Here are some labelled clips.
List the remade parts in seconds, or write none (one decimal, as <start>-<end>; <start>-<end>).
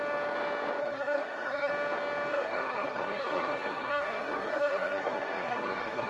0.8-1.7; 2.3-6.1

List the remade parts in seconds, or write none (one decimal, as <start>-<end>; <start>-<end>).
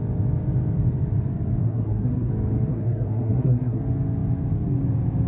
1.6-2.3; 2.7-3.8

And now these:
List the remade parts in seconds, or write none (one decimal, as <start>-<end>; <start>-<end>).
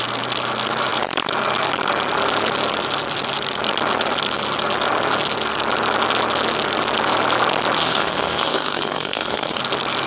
7.8-9.6